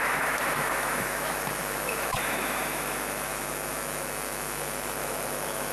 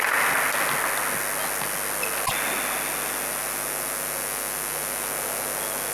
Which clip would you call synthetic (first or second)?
first